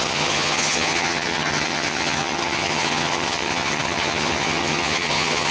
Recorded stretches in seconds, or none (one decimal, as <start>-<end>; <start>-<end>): none